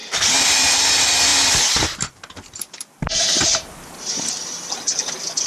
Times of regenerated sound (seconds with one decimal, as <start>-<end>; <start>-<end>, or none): 0.5-5.5